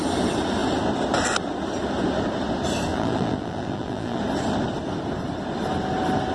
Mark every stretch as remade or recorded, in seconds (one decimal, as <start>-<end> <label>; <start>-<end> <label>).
0.0-2.9 recorded; 2.9-4.2 remade; 4.2-6.3 recorded

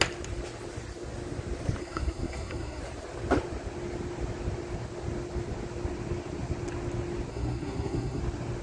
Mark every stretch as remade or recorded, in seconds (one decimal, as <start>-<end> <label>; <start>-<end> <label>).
0.0-1.8 recorded; 1.8-2.8 remade; 2.8-7.3 recorded; 7.3-8.2 remade; 8.2-8.6 recorded

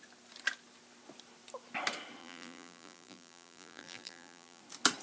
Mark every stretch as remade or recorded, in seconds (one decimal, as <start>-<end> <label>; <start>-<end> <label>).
0.0-2.2 recorded; 2.2-4.6 remade; 4.6-5.0 recorded